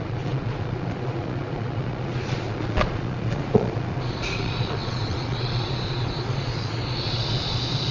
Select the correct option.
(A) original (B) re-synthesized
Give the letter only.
B